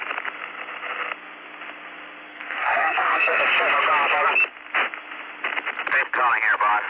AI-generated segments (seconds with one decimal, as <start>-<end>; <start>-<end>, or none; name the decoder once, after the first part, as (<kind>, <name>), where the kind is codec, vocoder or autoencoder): 2.3-3.4 (codec, SNAC)